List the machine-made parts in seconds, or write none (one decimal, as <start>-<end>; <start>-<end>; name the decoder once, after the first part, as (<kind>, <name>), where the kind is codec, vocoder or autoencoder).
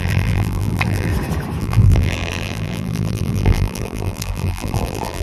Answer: 0.0-1.1 (vocoder, BigVGAN v2); 1.6-5.2